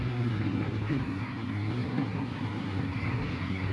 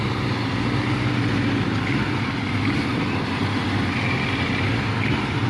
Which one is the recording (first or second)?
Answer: second